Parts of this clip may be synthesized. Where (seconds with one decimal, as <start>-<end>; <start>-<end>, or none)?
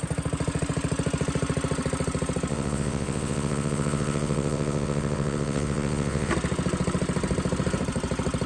2.5-6.3